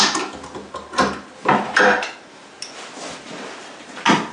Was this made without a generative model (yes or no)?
yes